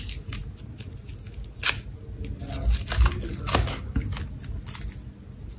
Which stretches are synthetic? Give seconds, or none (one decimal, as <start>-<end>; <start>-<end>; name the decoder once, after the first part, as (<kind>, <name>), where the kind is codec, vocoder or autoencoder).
none